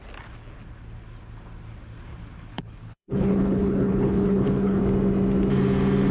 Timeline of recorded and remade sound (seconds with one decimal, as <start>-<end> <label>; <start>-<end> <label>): 0.0-2.5 recorded; 2.5-4.8 remade; 4.8-6.1 recorded